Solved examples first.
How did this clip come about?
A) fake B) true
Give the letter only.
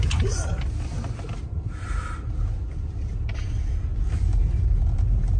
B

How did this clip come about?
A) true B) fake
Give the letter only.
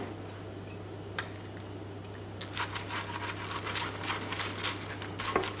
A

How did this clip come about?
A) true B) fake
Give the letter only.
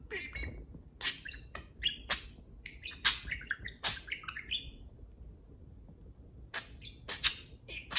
A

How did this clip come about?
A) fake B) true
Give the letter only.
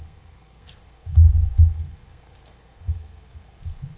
A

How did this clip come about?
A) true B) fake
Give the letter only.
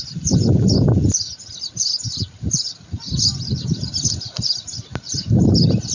A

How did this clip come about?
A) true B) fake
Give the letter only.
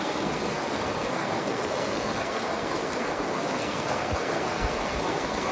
B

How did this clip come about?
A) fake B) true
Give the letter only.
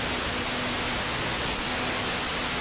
B